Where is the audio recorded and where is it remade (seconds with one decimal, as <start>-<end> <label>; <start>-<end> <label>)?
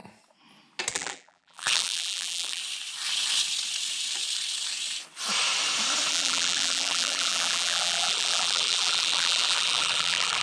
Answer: 0.0-0.9 recorded; 0.9-2.6 remade; 2.6-6.1 recorded; 6.1-10.4 remade